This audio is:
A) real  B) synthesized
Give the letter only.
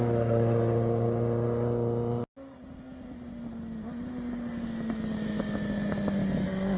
A